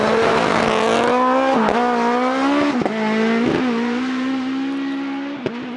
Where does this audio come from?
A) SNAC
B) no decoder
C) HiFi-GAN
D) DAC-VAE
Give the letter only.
B